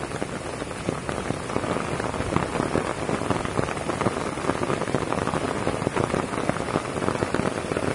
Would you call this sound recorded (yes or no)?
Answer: yes